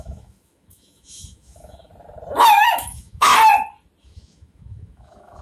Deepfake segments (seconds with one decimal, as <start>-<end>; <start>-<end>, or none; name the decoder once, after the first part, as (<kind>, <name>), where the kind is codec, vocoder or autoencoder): 0.0-1.9 (autoencoder, DAC-VAE); 2.4-3.3; 4.0-5.4